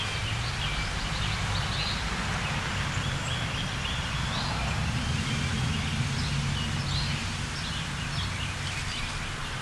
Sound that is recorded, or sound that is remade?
recorded